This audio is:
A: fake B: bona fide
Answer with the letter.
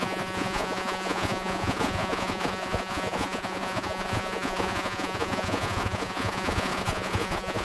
A